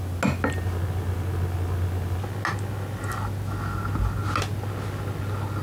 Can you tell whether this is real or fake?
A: real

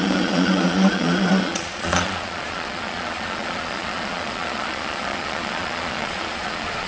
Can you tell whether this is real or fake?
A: fake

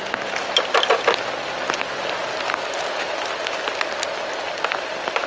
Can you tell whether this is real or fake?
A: real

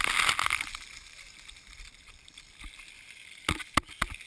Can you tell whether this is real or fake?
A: real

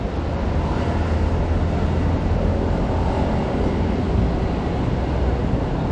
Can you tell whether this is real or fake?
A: real